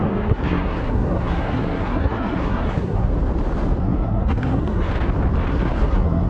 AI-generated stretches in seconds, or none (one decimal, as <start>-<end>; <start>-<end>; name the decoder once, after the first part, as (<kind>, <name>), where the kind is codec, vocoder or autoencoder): 0.0-3.1 (codec, SNAC); 3.8-4.9; 5.5-6.3